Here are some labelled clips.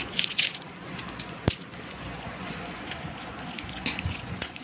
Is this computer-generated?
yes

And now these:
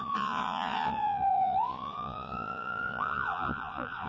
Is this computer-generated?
yes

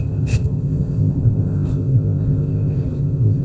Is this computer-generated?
yes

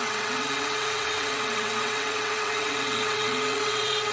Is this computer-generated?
yes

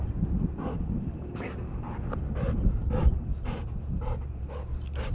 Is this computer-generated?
no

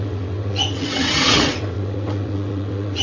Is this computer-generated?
yes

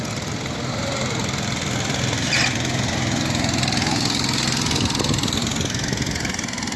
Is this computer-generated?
no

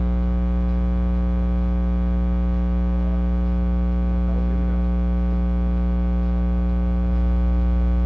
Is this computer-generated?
no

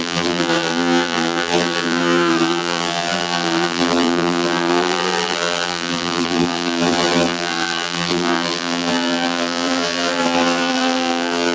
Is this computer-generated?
yes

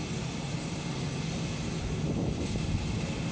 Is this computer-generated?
no